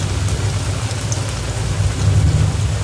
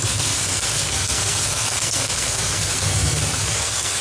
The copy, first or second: second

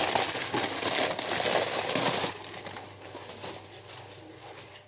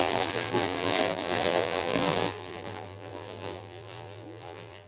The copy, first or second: second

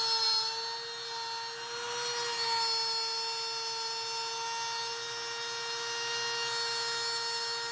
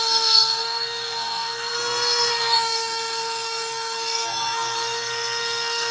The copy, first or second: second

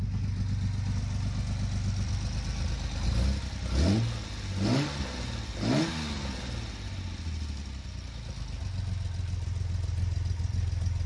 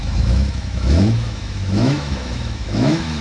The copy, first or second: second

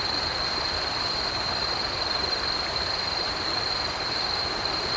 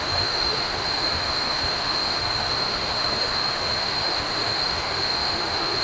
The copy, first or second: second